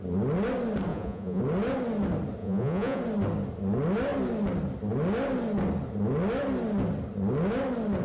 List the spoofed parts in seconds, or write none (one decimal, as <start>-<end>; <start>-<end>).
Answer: 0.9-1.4; 2.4-3.0